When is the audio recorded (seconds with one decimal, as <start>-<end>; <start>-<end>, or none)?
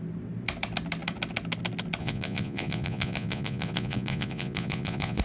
0.0-2.0